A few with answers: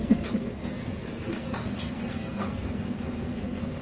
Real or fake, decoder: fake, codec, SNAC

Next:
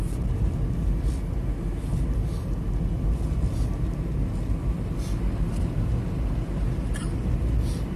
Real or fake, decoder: real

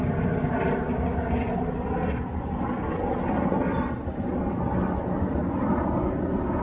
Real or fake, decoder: real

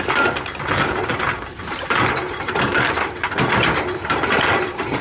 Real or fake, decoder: fake, vocoder, BigVGAN v2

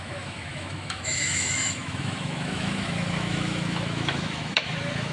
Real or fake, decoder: fake, autoencoder, DAC-VAE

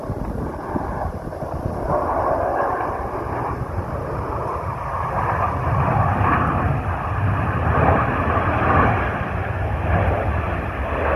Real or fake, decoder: real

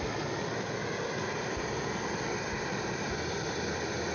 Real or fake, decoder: fake, vocoder, BigVGAN v2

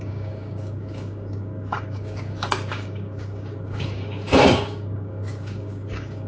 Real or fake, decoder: fake, codec, DAC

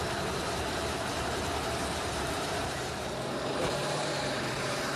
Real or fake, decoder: fake, vocoder, BigVGAN v2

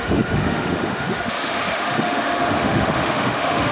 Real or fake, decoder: fake, autoencoder, DAC-VAE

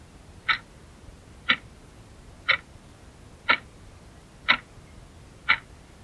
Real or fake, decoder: real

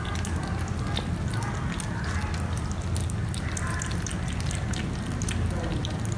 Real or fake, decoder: real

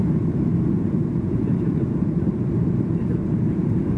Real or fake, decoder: fake, vocoder, BigVGAN v2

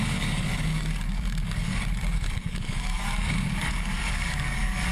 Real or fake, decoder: fake, codec, DAC